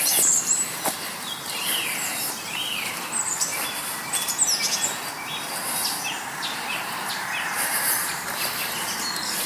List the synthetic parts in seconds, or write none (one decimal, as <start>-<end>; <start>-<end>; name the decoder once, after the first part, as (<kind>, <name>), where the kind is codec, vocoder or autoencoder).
0.0-3.5 (vocoder, BigVGAN v2); 7.1-9.5